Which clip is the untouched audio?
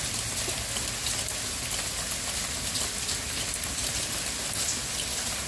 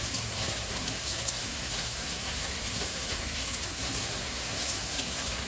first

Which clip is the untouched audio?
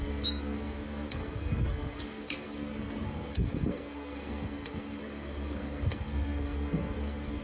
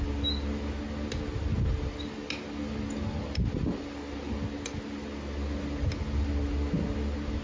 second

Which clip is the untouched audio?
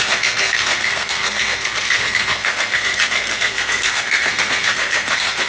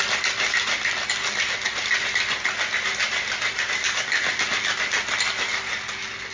second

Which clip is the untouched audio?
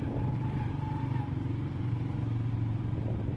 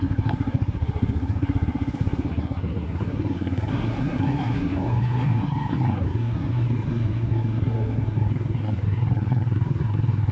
first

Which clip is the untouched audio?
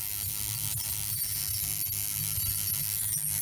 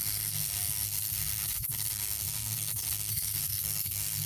first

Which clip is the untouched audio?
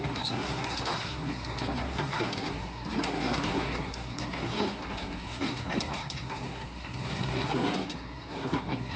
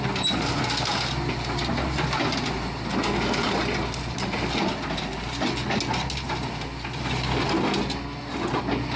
second